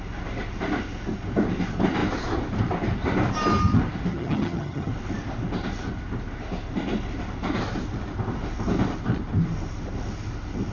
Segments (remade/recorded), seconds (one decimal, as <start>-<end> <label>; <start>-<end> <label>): 0.0-4.1 recorded; 4.1-4.9 remade; 4.9-10.7 recorded